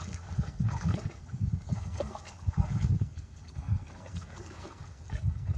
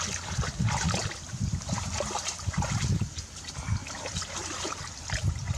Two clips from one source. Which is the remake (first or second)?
first